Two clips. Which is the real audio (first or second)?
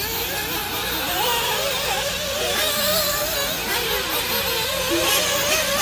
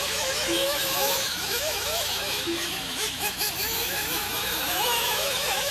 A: first